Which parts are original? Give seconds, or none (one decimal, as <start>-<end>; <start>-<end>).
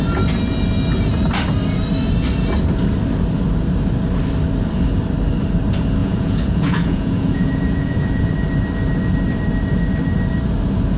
0.0-6.0; 8.3-11.0